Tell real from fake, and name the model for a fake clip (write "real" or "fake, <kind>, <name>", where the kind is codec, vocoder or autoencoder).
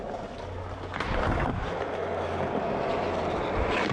real